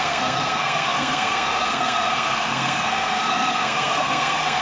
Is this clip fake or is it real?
fake